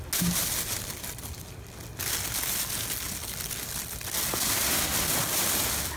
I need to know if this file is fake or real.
real